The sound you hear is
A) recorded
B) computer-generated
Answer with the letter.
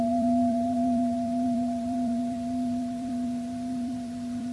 B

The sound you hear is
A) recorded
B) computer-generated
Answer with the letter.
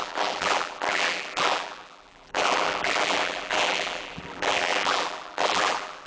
B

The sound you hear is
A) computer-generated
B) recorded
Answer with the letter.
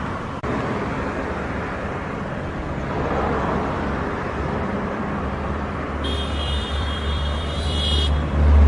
A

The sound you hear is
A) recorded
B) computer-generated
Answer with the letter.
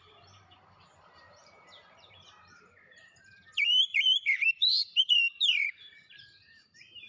B